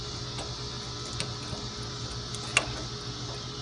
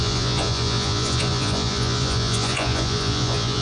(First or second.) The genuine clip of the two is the first